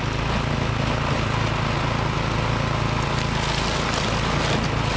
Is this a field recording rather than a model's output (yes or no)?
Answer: yes